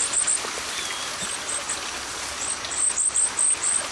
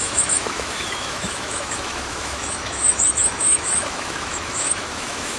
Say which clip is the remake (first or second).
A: second